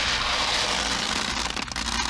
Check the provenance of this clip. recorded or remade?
recorded